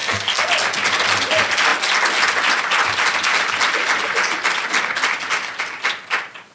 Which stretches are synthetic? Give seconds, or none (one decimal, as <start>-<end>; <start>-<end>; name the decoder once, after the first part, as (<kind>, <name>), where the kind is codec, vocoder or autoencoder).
0.0-0.5 (codec, SNAC)